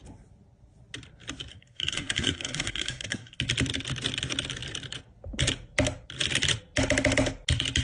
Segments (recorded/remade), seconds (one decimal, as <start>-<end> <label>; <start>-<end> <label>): 0.0-1.5 recorded; 1.5-3.4 remade; 3.4-7.8 recorded